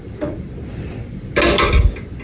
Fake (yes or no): no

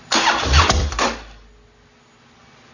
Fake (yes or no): no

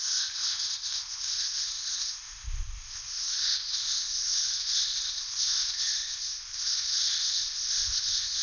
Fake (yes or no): yes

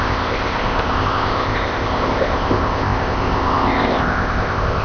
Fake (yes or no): yes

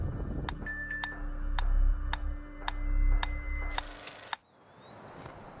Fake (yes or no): no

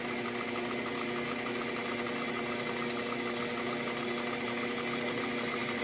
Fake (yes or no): no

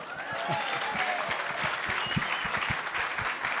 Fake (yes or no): no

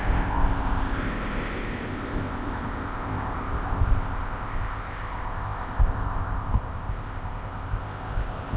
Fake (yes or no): yes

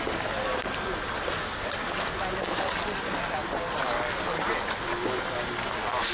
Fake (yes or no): no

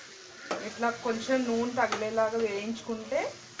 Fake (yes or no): no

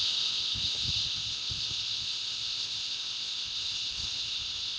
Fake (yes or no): yes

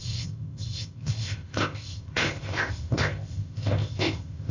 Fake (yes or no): yes